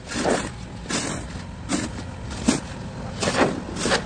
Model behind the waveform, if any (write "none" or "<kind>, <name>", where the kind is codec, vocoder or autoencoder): none